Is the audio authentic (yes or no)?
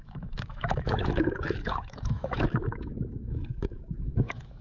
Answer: no